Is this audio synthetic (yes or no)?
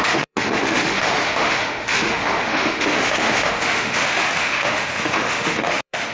yes